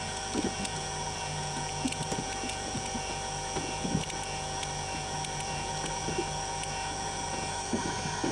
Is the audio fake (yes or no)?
yes